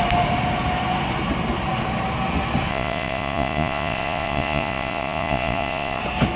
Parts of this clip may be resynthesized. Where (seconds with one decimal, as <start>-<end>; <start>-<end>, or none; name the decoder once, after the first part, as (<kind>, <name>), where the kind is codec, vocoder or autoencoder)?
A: 2.7-6.0 (vocoder, Vocos)